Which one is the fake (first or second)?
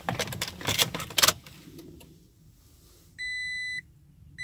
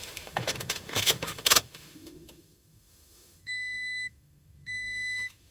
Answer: second